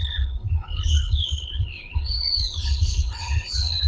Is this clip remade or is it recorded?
remade